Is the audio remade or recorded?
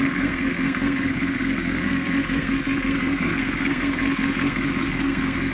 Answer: remade